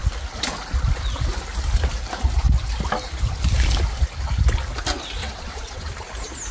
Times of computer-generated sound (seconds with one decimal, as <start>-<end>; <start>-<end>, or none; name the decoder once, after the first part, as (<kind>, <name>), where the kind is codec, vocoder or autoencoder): 5.2-5.9 (vocoder, WaveNeXt)